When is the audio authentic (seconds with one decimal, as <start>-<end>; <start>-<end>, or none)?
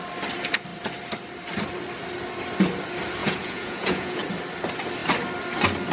0.0-3.2; 4.2-5.9